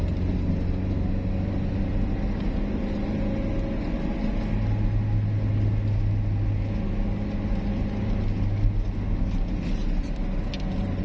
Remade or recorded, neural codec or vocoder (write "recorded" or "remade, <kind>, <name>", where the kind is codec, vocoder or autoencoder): recorded